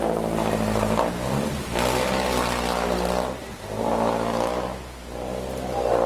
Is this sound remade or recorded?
recorded